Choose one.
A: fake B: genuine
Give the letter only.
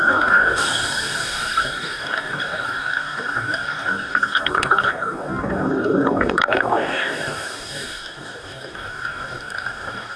A